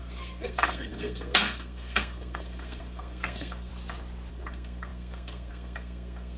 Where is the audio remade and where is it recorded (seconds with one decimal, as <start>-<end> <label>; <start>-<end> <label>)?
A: 0.0-3.7 remade; 3.7-4.3 recorded; 4.3-6.4 remade